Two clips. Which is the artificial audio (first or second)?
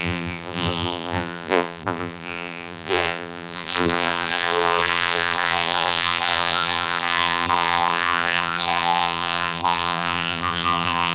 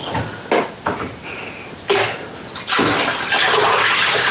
first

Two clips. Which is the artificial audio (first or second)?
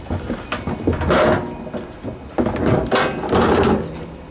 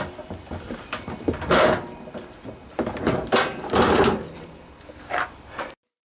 second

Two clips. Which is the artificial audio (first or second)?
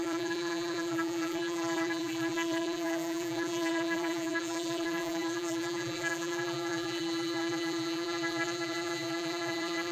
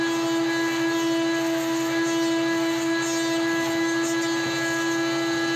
first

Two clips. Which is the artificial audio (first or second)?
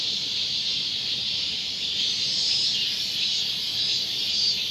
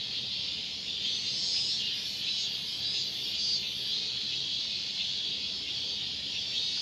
first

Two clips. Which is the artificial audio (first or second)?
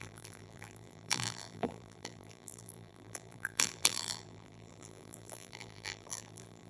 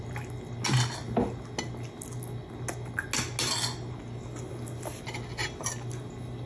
first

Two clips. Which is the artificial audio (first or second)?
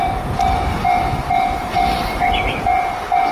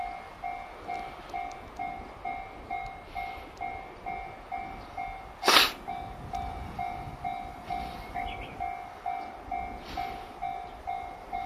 first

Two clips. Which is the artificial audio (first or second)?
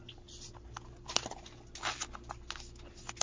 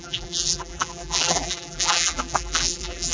second